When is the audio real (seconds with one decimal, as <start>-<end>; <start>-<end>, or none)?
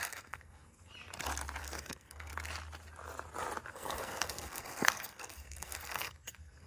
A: 0.9-1.6; 2.3-3.7